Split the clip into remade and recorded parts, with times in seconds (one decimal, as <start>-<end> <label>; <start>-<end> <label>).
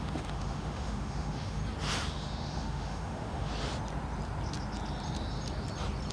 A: 0.0-1.6 remade; 1.6-2.1 recorded; 2.1-3.5 remade; 3.5-6.1 recorded